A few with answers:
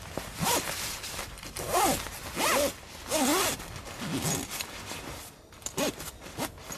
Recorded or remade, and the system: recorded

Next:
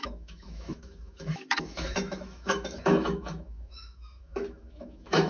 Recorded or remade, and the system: remade, autoencoder, DAC-VAE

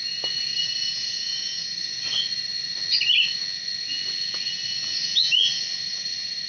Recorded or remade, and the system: recorded